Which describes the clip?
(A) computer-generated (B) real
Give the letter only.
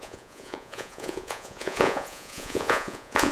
A